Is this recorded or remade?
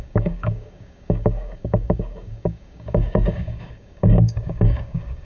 remade